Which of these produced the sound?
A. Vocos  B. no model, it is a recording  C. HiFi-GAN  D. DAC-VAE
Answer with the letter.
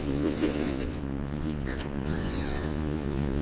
A